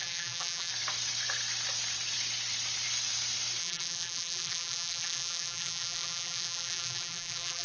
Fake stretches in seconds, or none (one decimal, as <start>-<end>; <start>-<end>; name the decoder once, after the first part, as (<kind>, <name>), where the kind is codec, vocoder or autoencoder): 0.0-0.7 (vocoder, BigVGAN v2); 3.6-7.6